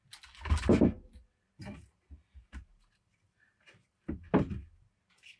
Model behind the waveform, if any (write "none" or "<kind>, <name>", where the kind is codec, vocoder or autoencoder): none